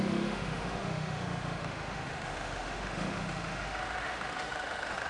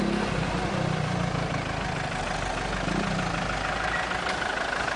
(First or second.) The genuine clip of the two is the second